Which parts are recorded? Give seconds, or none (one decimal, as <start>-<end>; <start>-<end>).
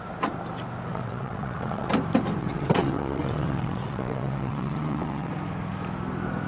0.0-0.9; 1.9-2.4; 5.3-6.5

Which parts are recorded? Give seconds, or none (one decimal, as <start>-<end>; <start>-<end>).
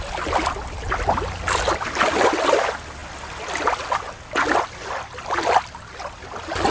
0.0-6.7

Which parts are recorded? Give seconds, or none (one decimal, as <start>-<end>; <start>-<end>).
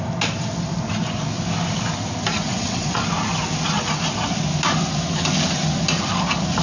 0.0-2.5; 3.0-6.6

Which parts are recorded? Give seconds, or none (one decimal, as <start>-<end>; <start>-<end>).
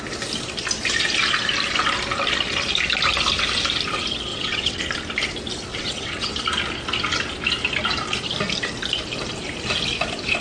0.0-4.3; 4.8-5.7; 6.3-10.4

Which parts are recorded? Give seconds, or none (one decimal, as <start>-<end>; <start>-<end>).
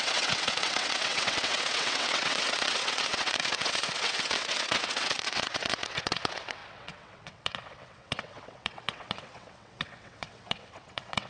none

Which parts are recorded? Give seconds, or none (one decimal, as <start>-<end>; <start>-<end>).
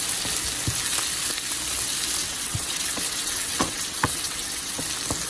0.0-2.2; 4.8-5.3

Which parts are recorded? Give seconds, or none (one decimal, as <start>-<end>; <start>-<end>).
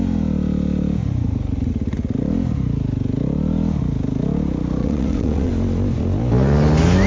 0.0-4.8; 5.5-7.1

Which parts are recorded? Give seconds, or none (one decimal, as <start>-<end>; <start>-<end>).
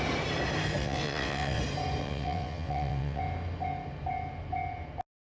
0.0-0.8; 1.6-2.0; 3.2-5.3